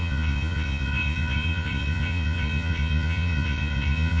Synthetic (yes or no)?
yes